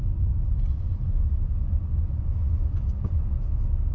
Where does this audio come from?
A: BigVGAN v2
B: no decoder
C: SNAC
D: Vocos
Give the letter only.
B